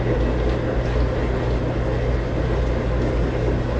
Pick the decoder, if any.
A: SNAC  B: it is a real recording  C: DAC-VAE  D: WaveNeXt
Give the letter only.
B